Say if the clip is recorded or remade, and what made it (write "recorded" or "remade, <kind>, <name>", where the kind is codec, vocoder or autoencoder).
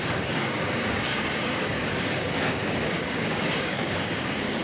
remade, codec, DAC